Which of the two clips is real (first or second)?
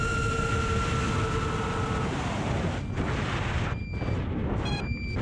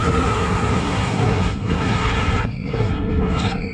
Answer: first